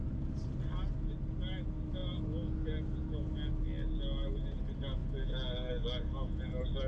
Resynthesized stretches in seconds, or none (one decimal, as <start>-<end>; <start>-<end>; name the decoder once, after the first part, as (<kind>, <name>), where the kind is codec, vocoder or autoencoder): none